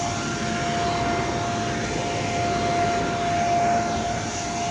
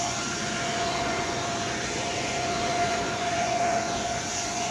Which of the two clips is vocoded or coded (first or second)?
second